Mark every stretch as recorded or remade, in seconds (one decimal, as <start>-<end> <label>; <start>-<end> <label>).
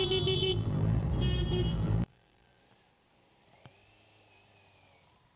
0.0-0.5 recorded; 0.5-1.1 remade; 1.1-1.7 recorded; 1.7-2.6 remade; 2.6-5.4 recorded